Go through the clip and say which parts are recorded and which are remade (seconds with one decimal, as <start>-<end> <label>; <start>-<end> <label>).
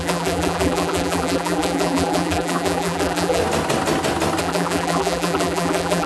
0.0-3.4 remade; 3.4-4.4 recorded; 4.4-6.1 remade